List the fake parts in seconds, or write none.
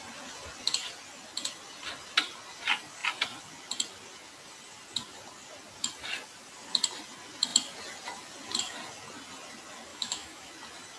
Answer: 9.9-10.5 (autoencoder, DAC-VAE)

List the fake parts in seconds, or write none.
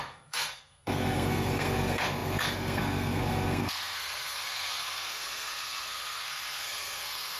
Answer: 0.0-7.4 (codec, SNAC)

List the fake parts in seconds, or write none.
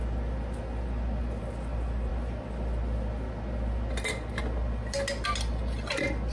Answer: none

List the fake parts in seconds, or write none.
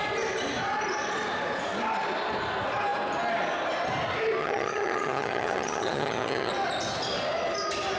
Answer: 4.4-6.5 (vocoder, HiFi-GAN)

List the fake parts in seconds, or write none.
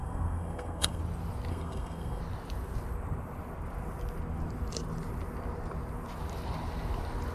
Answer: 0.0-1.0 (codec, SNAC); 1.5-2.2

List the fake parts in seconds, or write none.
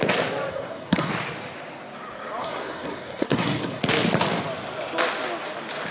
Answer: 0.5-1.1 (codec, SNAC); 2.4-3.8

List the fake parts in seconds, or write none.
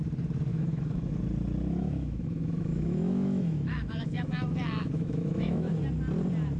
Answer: 0.5-1.1 (autoencoder, DAC-VAE); 1.8-5.8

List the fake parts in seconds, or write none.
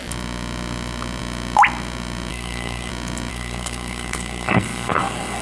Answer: 2.3-2.9 (codec, SNAC); 3.3-5.4